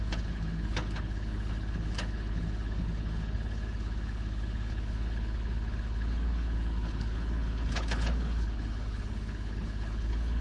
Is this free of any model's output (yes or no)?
no